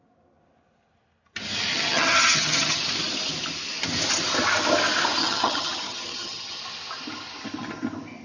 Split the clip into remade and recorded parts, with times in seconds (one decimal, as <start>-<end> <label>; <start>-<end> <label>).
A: 0.0-1.7 recorded; 1.7-2.8 remade; 2.8-5.2 recorded; 5.2-6.6 remade; 6.6-8.2 recorded